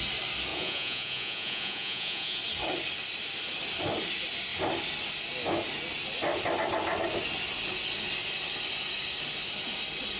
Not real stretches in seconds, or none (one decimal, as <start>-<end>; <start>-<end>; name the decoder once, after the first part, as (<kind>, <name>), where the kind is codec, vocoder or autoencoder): 0.5-2.4 (vocoder, Vocos)